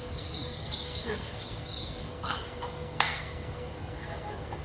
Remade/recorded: remade